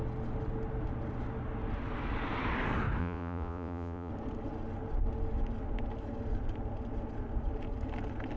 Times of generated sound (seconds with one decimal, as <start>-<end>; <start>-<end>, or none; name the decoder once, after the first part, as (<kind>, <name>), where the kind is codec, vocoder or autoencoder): 3.0-4.1 (vocoder, Vocos)